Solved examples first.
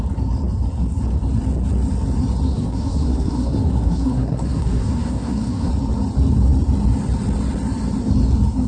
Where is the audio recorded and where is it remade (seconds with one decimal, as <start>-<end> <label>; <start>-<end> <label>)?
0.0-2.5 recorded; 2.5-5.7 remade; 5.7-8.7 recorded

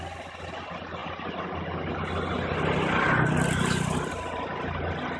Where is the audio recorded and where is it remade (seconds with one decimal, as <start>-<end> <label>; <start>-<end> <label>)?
0.0-5.2 recorded

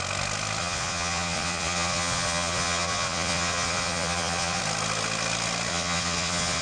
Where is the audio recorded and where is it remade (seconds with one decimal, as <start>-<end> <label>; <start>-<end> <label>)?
0.0-0.6 recorded; 0.6-4.6 remade; 4.6-5.7 recorded; 5.7-6.6 remade

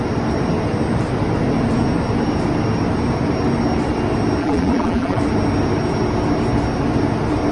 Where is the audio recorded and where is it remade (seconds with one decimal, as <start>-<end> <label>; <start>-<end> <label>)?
0.0-4.4 recorded; 4.4-5.2 remade; 5.2-7.5 recorded

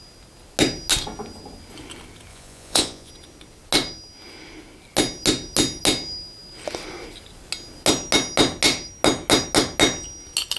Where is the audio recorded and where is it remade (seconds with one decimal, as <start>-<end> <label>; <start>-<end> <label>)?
0.0-2.3 recorded; 2.3-3.1 remade; 3.1-10.6 recorded

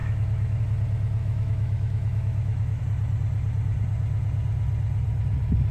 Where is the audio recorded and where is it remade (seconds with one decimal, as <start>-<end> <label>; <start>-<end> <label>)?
0.0-0.6 remade; 0.6-1.2 recorded; 1.2-2.8 remade; 2.8-5.7 recorded

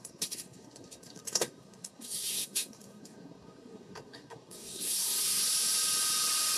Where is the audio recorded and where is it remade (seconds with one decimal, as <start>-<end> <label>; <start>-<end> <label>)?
0.0-5.4 remade; 5.4-6.6 recorded